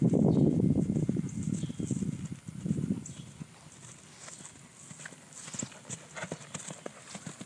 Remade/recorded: recorded